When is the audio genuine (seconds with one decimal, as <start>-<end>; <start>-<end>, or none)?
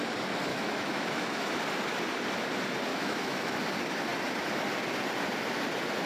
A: 0.0-0.5; 1.6-2.9; 3.6-6.1